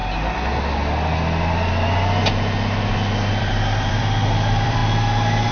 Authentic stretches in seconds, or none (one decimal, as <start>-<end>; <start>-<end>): 0.0-3.3; 4.8-5.5